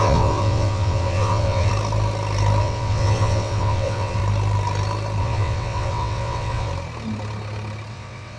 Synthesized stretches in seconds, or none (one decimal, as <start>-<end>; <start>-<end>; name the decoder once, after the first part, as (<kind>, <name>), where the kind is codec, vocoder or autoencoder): 0.0-1.7 (vocoder, WaveNeXt); 2.6-4.2; 5.2-6.7; 7.9-8.4